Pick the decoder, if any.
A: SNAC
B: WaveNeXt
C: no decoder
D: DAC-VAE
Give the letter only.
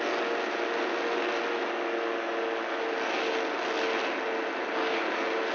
C